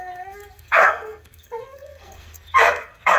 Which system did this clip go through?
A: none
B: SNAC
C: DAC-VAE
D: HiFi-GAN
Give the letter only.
B